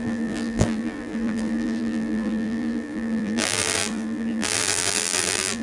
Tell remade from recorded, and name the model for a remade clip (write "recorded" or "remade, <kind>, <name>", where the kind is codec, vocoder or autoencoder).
remade, vocoder, BigVGAN v2